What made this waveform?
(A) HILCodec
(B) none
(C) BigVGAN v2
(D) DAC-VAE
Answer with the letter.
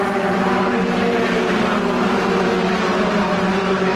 B